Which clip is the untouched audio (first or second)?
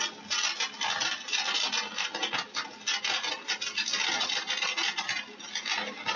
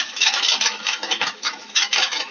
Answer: first